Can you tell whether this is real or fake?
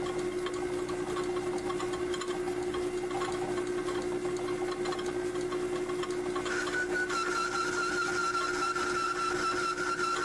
real